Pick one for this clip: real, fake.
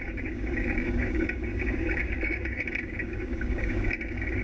fake